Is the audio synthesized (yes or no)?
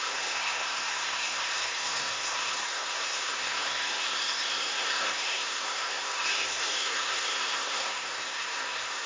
yes